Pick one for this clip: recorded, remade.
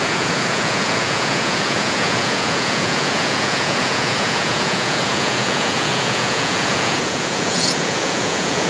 remade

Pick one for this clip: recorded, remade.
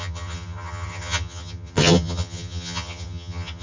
remade